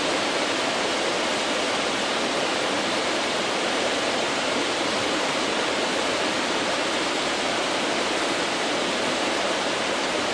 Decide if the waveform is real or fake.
fake